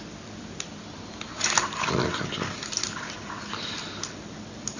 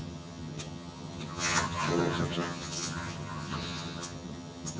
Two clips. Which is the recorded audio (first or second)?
first